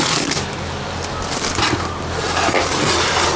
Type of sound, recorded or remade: recorded